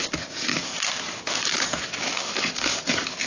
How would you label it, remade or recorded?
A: remade